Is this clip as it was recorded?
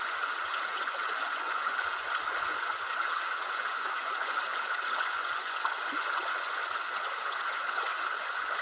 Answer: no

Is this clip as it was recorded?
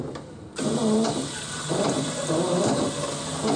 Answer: yes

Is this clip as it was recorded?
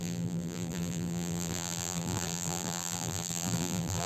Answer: no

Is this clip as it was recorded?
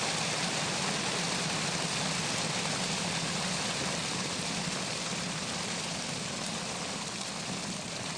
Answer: yes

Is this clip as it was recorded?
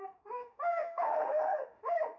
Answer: no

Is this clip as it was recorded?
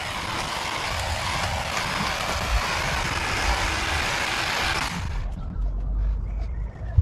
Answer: yes